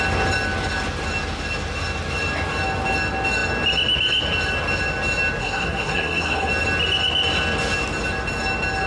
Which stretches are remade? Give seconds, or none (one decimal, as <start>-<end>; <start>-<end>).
5.4-6.5